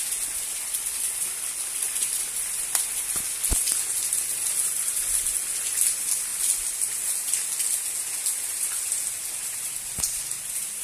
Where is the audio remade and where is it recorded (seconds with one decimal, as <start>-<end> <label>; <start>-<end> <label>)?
0.0-10.8 recorded